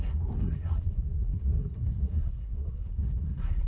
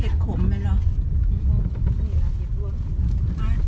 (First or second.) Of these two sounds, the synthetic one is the first